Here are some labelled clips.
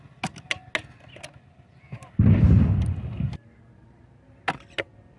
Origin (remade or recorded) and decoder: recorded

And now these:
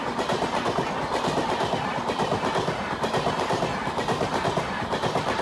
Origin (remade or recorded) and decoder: recorded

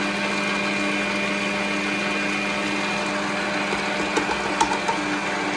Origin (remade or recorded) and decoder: recorded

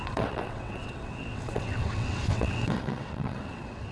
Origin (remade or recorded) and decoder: remade, vocoder, WaveNeXt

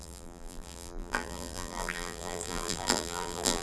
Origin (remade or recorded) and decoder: remade, vocoder, BigVGAN v2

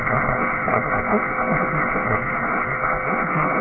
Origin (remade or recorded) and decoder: remade, codec, SNAC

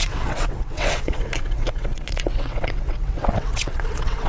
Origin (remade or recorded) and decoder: remade, vocoder, WaveNeXt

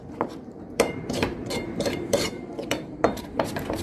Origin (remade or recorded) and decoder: remade, vocoder, BigVGAN v2